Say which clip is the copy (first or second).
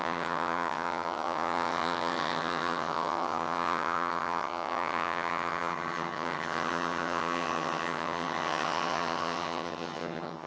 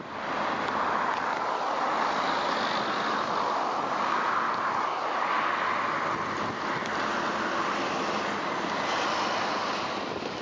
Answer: first